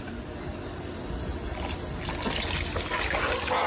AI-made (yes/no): no